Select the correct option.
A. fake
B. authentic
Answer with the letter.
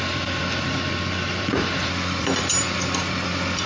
A